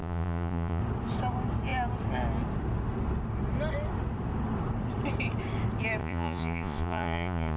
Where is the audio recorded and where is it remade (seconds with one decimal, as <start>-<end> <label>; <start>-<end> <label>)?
0.0-0.8 remade; 0.8-6.0 recorded; 6.0-7.6 remade